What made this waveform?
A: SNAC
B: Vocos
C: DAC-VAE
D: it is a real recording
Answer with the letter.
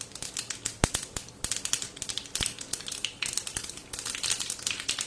D